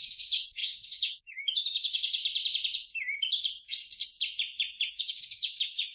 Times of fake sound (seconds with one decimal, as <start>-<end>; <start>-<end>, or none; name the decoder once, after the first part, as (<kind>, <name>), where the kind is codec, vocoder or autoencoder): 0.0-2.2 (codec, DAC); 4.9-5.9